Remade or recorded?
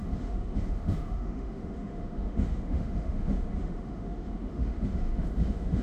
remade